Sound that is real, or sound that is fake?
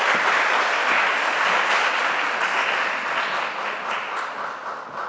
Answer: real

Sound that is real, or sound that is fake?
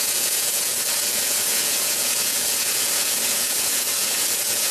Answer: fake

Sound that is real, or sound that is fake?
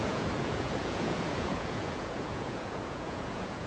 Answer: fake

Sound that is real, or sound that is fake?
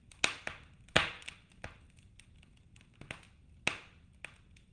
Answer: real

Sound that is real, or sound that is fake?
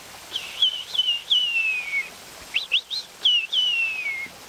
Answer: real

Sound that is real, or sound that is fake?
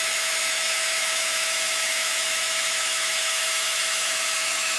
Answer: fake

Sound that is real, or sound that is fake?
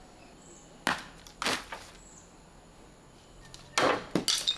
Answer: real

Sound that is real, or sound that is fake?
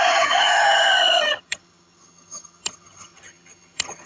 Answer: fake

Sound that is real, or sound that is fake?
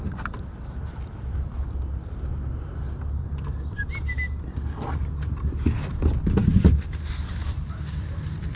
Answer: real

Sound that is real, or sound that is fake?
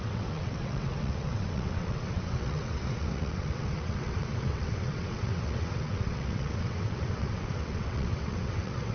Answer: fake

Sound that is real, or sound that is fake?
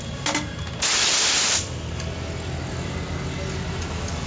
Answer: real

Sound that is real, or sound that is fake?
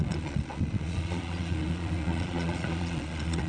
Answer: fake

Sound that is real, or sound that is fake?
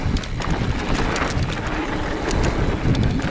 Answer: real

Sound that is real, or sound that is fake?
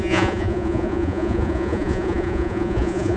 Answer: fake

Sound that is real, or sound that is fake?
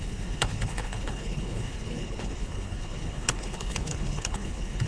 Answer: fake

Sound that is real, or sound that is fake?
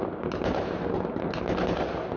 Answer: real